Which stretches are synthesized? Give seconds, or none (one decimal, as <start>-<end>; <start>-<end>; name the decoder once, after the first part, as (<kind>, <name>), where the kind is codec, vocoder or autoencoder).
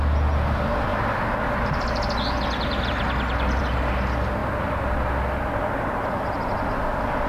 none